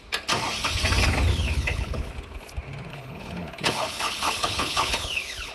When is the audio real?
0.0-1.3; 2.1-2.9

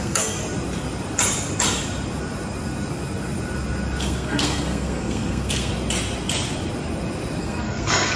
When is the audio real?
0.4-4.0; 5.7-7.4